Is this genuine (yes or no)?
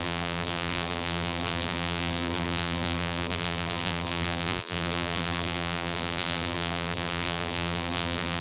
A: no